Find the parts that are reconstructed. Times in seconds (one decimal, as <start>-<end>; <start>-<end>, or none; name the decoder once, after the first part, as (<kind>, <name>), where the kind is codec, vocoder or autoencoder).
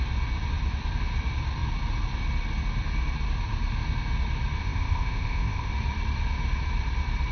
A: 4.6-5.7 (codec, ZipCodec)